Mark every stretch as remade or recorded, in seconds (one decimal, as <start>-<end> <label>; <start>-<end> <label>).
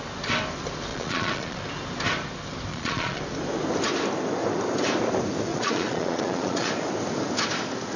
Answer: 0.0-0.9 recorded; 0.9-1.6 remade; 1.6-2.7 recorded; 2.7-3.2 remade; 3.2-5.5 recorded; 5.5-6.7 remade; 6.7-8.0 recorded